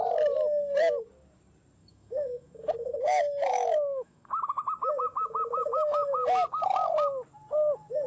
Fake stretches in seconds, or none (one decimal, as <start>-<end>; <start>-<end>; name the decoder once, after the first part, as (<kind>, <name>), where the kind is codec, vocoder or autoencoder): 1.8-6.5 (autoencoder, DAC-VAE)